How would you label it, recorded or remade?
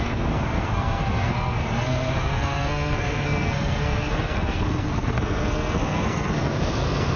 remade